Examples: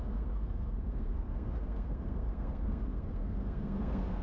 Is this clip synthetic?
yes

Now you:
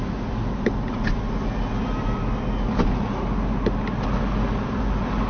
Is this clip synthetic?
no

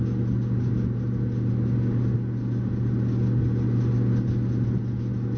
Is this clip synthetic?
no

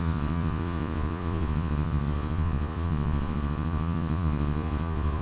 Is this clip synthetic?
yes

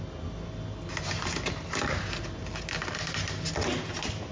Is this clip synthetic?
no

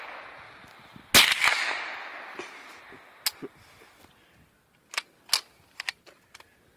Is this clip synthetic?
no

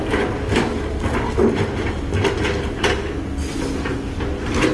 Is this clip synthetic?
no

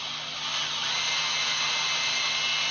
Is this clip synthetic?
no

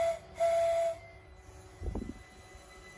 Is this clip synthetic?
no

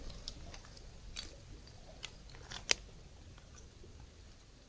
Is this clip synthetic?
no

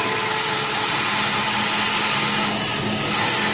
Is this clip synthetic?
no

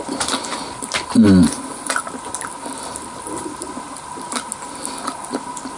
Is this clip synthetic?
no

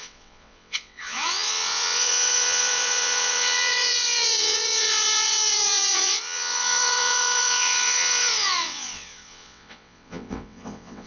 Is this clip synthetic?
yes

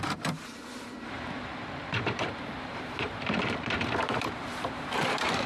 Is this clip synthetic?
yes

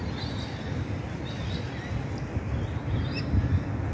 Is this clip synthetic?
no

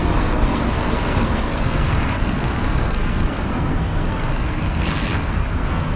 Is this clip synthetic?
yes